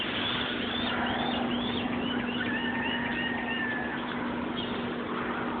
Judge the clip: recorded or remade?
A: recorded